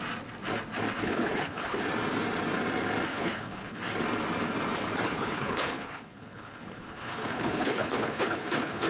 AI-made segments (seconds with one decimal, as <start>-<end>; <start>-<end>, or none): 1.0-1.8; 3.1-3.8; 5.1-8.9